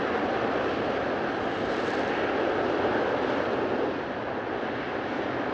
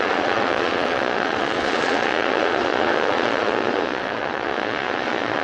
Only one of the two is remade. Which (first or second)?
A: second